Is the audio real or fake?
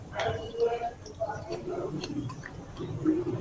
fake